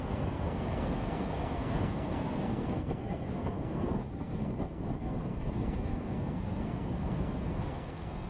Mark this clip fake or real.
fake